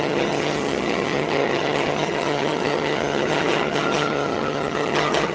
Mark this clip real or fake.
fake